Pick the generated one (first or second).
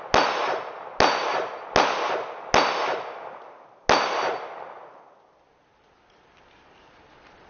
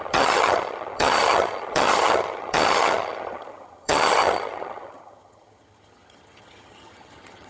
second